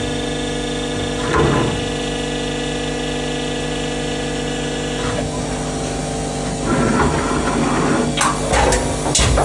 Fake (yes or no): no